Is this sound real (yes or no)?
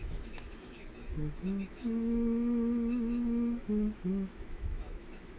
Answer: no